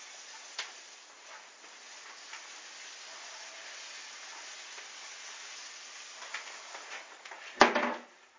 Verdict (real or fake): real